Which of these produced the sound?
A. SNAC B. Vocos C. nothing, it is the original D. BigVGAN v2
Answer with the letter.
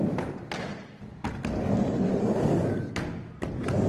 C